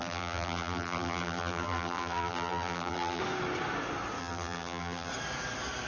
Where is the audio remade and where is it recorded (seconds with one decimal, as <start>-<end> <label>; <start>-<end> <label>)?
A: 0.0-3.2 remade; 3.2-4.2 recorded; 4.2-5.1 remade; 5.1-5.9 recorded